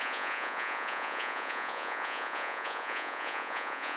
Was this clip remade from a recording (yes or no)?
yes